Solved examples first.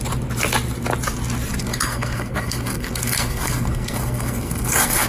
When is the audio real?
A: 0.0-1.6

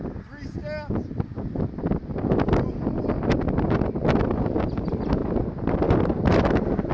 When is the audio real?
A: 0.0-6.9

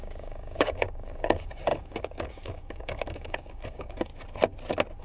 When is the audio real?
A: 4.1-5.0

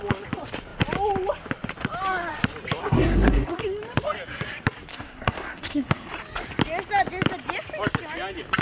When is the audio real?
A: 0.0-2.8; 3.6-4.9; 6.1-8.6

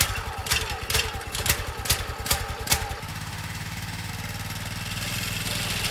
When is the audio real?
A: 0.0-3.1; 4.1-5.9

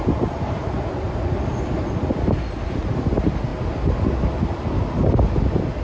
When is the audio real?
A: 0.0-5.8

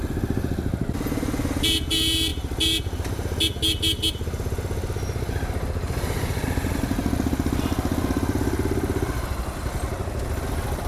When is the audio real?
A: 0.0-10.9